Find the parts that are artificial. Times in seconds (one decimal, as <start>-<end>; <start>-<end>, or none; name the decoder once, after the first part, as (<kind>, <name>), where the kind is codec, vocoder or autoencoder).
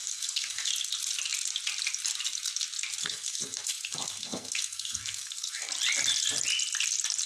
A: 0.0-0.7 (codec, SNAC); 3.0-5.7